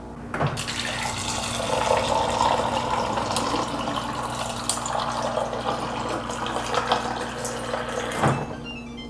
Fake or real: real